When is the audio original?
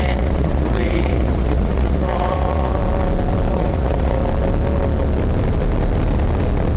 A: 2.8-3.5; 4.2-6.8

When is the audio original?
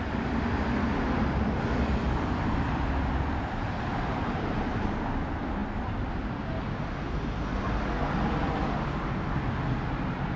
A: 0.0-10.4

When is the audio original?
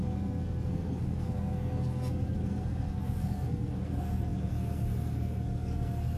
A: none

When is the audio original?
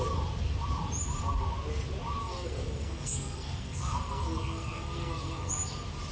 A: 0.0-2.2; 5.5-6.1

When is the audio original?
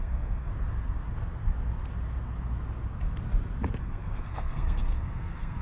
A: 0.5-3.8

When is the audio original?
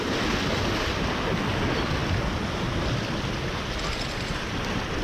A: 0.0-5.0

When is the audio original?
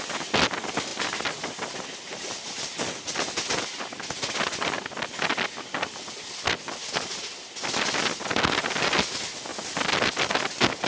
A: 0.0-10.9